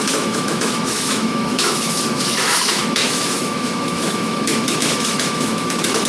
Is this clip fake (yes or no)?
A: yes